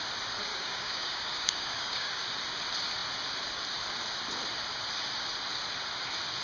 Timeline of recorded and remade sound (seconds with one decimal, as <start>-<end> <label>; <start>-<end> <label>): 0.0-0.5 recorded; 0.5-2.2 remade; 2.2-6.4 recorded